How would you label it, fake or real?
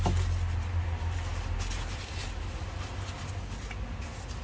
real